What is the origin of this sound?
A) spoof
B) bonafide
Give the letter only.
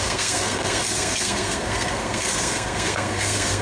A